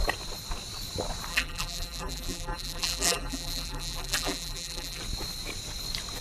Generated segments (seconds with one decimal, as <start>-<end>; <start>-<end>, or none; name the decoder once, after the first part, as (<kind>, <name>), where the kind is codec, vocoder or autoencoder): 1.3-5.0 (vocoder, BigVGAN v2)